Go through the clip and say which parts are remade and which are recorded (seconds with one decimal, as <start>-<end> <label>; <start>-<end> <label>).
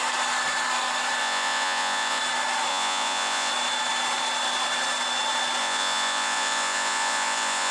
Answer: 0.0-1.2 recorded; 1.2-2.2 remade; 2.2-2.7 recorded; 2.7-3.5 remade; 3.5-5.6 recorded; 5.6-7.7 remade